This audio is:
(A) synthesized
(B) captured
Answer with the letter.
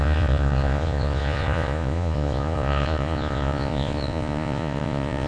A